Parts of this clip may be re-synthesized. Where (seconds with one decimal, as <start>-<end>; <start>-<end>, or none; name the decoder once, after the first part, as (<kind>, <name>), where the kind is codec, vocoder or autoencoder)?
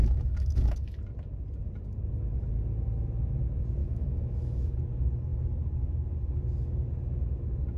0.0-1.0 (autoencoder, DAC-VAE); 3.8-4.7